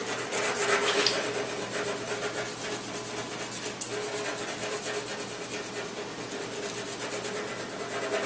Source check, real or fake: real